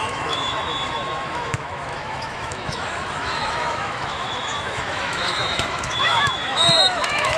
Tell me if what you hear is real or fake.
fake